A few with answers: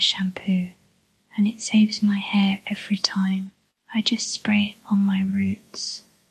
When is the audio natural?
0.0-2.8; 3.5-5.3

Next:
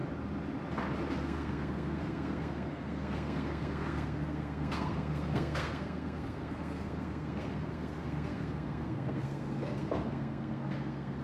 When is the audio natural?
0.0-1.2